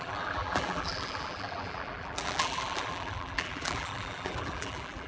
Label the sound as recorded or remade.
remade